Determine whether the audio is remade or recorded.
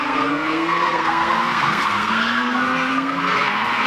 remade